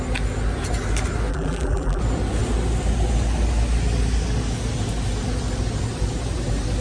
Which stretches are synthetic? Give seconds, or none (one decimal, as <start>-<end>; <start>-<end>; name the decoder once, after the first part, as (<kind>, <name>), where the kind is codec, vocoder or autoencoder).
1.3-2.0 (vocoder, BigVGAN v2)